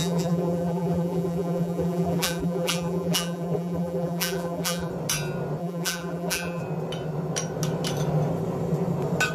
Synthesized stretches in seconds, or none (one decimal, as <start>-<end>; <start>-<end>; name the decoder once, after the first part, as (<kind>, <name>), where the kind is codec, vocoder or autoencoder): 0.0-4.9 (vocoder, BigVGAN v2); 5.6-6.6